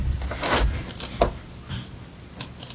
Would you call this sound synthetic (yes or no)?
no